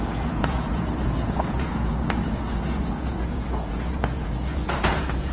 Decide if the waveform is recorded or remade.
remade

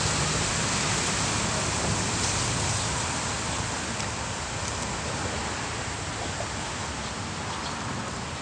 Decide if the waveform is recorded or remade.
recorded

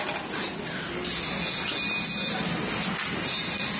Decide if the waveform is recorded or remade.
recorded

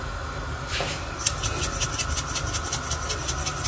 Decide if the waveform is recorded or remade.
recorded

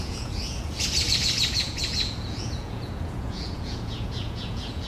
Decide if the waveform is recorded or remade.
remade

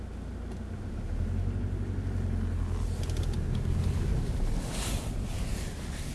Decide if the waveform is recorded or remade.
recorded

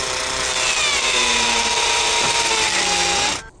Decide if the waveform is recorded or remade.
recorded